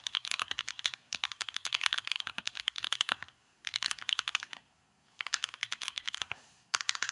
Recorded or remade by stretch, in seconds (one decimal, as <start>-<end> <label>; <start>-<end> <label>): 0.0-7.1 remade